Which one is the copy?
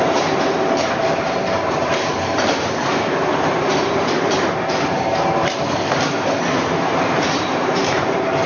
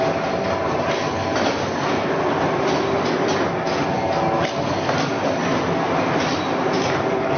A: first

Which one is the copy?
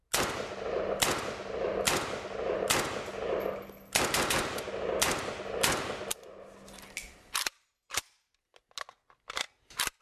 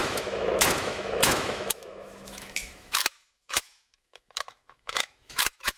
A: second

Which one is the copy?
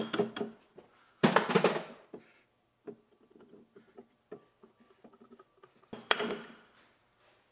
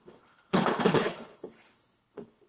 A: second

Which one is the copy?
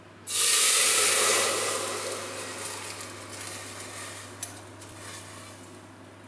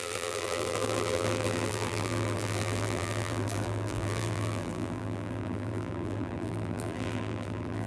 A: second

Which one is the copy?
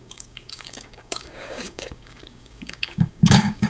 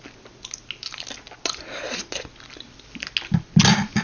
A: first